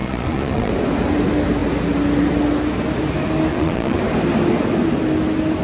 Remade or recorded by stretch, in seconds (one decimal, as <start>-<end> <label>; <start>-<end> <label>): 0.0-0.7 remade; 0.7-3.5 recorded; 3.5-4.0 remade; 4.0-5.6 recorded